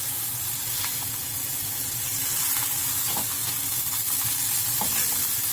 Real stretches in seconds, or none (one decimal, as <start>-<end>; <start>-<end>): 0.0-5.5